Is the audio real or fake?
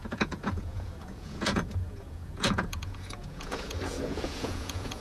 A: fake